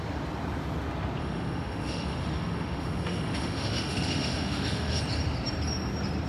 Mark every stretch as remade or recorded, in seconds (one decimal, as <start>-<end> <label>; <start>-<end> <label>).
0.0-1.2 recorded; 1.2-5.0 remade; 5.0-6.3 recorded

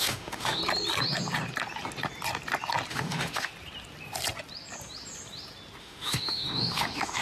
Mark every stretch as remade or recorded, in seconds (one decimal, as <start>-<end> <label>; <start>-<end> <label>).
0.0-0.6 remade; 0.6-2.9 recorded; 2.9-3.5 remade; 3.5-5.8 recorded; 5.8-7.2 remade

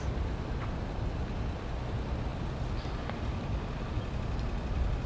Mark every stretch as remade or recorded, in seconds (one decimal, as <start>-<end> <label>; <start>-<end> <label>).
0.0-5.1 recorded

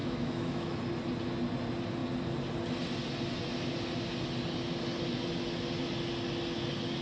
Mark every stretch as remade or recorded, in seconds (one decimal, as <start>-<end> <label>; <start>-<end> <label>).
0.0-0.8 remade; 0.8-7.0 recorded